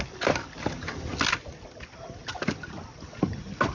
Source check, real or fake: real